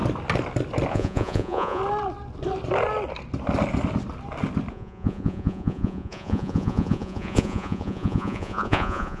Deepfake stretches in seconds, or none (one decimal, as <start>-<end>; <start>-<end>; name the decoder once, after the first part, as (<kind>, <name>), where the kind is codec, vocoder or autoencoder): 0.9-1.8 (vocoder, Vocos); 4.7-9.2